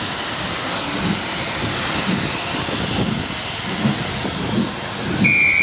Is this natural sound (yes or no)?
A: yes